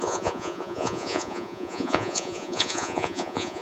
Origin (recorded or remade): remade